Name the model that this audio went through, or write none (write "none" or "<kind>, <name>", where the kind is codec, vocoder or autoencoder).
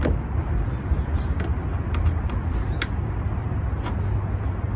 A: none